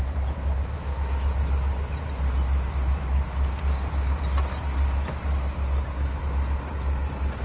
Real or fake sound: real